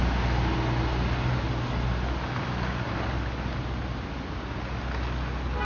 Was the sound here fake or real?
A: real